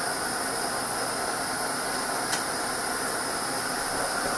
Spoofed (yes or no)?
no